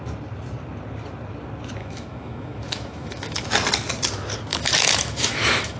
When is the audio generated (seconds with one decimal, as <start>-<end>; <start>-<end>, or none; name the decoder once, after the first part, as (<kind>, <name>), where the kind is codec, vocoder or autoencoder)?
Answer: 1.8-3.4 (autoencoder, DAC-VAE); 4.5-5.8